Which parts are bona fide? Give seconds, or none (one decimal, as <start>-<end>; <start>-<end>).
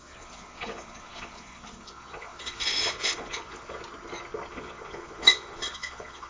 3.8-4.5